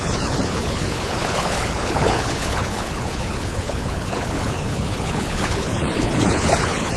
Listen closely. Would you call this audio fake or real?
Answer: fake